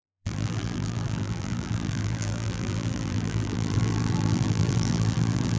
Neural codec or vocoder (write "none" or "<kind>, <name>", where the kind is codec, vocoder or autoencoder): vocoder, BigVGAN v2